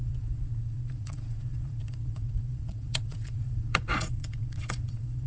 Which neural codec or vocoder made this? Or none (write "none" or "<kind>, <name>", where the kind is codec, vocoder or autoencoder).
vocoder, Vocos